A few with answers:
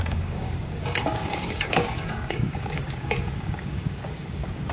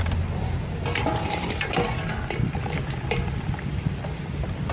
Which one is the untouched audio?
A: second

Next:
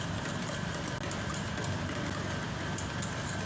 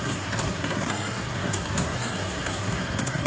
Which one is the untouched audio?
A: first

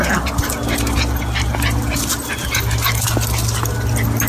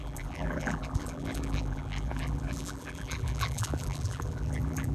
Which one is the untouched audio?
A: first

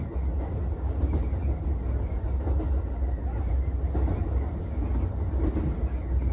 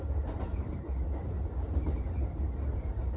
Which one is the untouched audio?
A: first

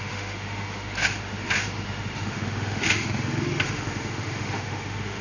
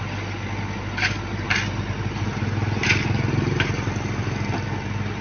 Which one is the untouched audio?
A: second